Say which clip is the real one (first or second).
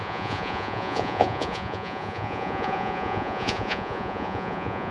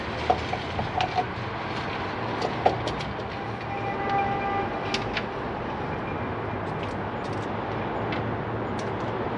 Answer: second